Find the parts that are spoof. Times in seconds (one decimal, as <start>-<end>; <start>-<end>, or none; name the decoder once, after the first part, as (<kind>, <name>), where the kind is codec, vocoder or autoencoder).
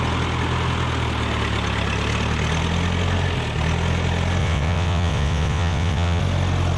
4.4-6.2 (vocoder, WaveNeXt)